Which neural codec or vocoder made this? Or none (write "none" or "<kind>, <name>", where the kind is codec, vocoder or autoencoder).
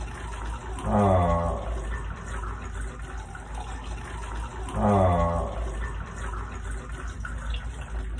none